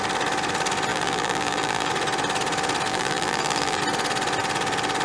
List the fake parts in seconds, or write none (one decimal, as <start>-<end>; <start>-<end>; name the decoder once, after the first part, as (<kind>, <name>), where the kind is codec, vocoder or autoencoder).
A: 0.9-1.9 (vocoder, BigVGAN v2); 2.9-3.8